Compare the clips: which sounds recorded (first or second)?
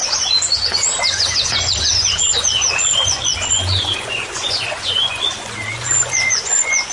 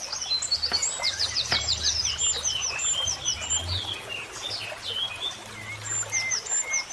second